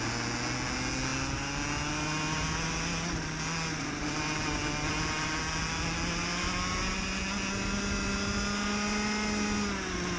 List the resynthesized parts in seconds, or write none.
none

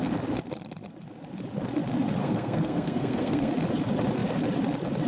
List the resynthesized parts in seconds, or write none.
2.2-3.5

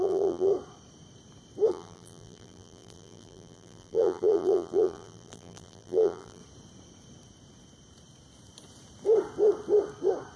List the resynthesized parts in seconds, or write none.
0.0-0.5; 1.7-6.4

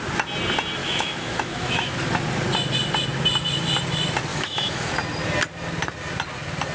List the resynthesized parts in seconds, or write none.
0.8-1.9; 4.3-4.9